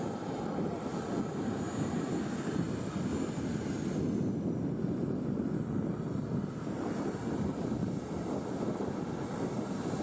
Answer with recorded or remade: recorded